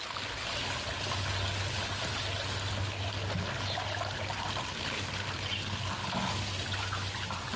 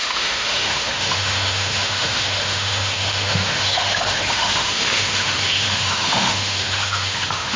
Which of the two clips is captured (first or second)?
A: first